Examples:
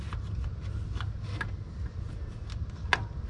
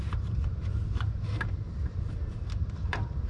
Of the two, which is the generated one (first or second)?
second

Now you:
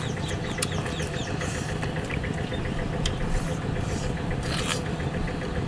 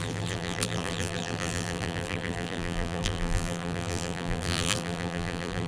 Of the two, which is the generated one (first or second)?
second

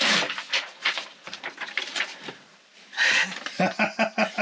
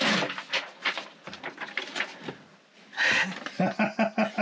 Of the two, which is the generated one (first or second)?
first